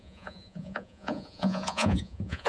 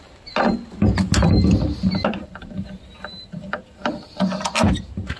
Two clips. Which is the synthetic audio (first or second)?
first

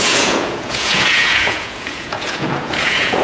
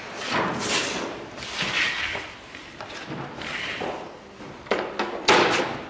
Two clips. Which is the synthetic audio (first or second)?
first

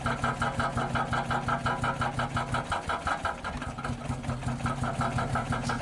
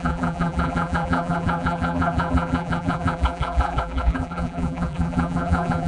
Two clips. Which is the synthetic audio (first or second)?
second